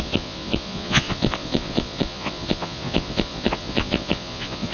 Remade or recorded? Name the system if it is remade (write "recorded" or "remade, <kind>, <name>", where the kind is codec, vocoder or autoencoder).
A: remade, vocoder, Vocos